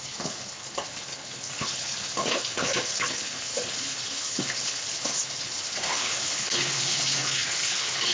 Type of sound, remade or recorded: remade